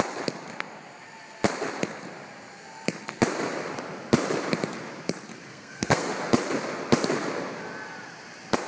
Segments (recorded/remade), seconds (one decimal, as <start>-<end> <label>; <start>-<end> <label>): 0.0-5.5 recorded; 5.5-6.1 remade; 6.1-8.7 recorded